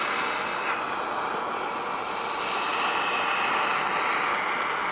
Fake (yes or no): no